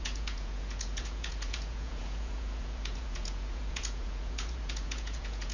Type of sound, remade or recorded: remade